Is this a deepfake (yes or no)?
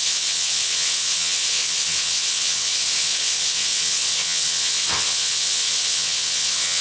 yes